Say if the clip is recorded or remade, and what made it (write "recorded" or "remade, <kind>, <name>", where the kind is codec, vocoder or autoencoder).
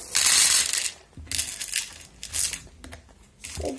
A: recorded